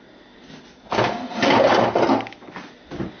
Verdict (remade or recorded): recorded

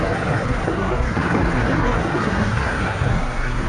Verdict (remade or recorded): remade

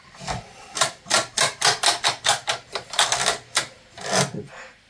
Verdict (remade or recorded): recorded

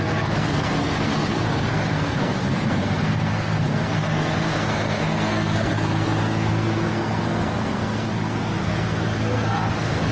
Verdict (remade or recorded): remade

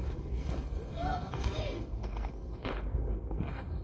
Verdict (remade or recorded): remade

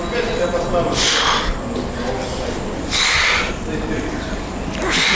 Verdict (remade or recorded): recorded